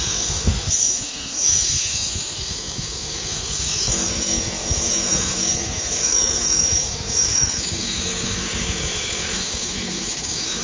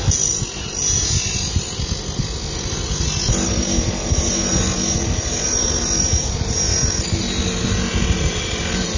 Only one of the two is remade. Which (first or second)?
first